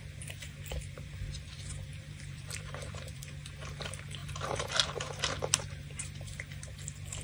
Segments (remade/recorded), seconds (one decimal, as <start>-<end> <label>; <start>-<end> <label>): 0.0-1.9 recorded; 1.9-3.2 remade; 3.2-4.2 recorded; 4.2-4.7 remade; 4.7-7.2 recorded